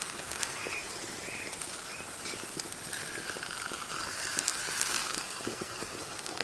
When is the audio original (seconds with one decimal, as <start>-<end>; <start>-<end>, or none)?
0.7-3.9